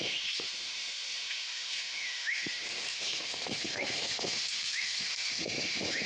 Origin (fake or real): fake